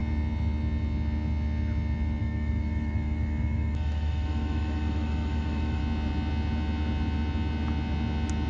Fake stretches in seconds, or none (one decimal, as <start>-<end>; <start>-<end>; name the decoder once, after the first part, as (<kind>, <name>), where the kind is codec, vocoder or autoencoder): 2.2-5.8 (autoencoder, DAC-VAE)